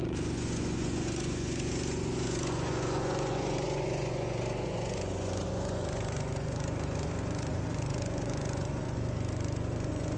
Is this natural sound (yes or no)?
no